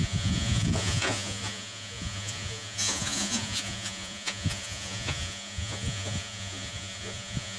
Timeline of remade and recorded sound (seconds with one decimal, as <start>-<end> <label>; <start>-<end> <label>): 0.0-7.6 remade